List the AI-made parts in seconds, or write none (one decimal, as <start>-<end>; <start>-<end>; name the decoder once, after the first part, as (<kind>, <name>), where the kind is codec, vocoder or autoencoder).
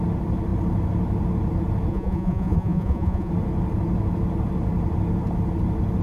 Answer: 1.9-3.3 (vocoder, Vocos)